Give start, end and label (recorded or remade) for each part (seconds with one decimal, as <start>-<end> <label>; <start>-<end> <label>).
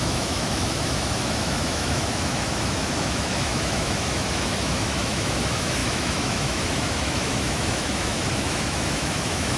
0.0-9.6 remade